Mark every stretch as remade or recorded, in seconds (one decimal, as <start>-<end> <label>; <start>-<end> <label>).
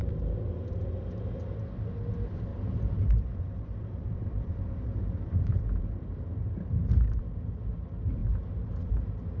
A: 0.0-2.5 recorded; 2.5-7.2 remade; 7.2-9.4 recorded